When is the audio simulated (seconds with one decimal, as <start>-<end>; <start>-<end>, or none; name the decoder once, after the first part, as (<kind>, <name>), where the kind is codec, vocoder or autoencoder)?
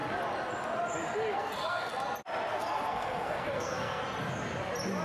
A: 1.3-1.9 (codec, SNAC); 2.5-4.0